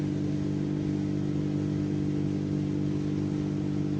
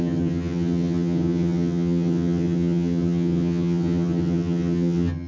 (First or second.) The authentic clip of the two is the first